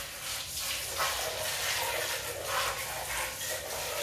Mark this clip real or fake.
real